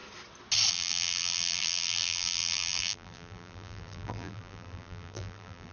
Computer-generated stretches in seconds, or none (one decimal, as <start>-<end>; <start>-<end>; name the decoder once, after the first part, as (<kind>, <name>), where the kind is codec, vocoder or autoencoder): 0.7-5.7 (vocoder, BigVGAN v2)